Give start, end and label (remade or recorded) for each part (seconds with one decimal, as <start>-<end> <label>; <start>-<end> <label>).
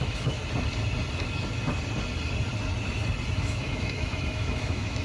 0.0-0.4 remade; 0.4-3.4 recorded; 3.4-5.0 remade